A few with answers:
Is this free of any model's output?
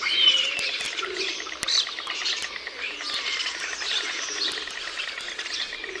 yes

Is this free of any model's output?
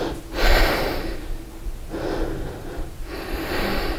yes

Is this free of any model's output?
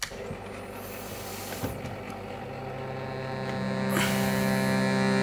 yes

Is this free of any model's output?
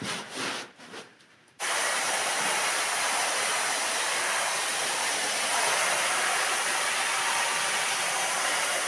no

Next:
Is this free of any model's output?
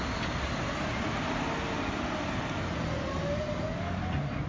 yes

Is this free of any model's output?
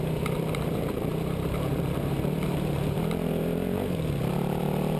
no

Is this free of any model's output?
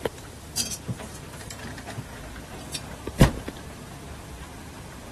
no